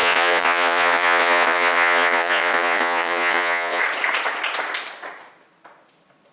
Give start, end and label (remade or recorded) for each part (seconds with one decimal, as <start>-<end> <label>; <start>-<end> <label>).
0.0-3.8 remade; 3.8-6.3 recorded